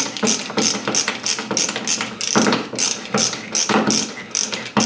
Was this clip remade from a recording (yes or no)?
no